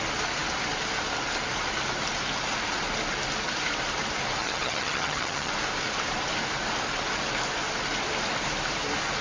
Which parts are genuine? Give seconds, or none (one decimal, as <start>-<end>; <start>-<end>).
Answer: 0.0-4.4; 5.5-9.2